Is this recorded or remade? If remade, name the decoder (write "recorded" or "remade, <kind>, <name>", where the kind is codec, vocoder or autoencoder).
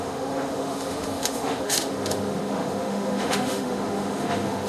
remade, autoencoder, DAC-VAE